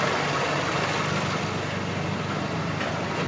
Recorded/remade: recorded